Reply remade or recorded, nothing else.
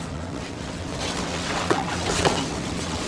remade